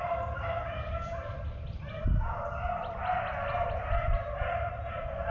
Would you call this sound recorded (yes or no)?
yes